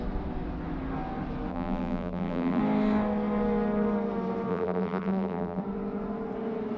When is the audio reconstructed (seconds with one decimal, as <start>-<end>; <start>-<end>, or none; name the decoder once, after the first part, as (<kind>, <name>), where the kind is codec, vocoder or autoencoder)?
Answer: 1.5-2.6 (vocoder, BigVGAN v2); 4.5-5.6